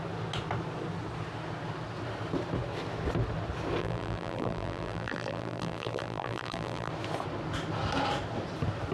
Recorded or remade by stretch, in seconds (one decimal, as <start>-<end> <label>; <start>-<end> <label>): 0.0-3.8 recorded; 3.8-6.9 remade; 6.9-8.9 recorded